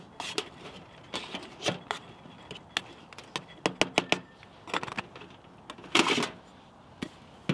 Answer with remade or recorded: recorded